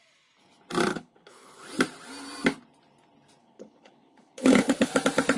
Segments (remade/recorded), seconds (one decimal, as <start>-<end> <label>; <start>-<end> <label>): 0.0-0.9 recorded; 0.9-1.6 remade; 1.6-3.4 recorded; 3.4-4.9 remade; 4.9-5.4 recorded